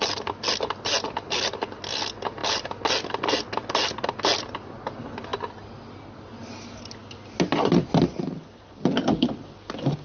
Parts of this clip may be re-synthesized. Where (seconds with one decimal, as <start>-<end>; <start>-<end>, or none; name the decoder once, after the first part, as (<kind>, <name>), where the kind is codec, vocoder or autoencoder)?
none